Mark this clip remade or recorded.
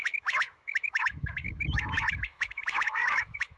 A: remade